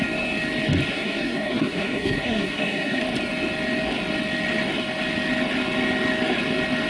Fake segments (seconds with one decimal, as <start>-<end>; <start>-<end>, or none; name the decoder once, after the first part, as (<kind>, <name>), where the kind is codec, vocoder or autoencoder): 0.9-3.0 (codec, SNAC)